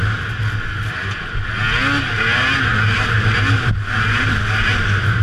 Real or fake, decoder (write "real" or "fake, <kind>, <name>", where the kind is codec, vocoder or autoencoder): real